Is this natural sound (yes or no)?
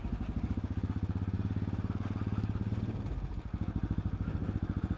yes